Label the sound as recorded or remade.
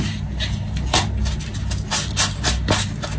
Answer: recorded